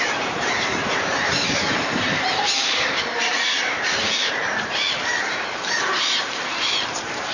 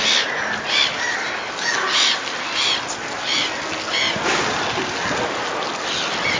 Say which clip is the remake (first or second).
first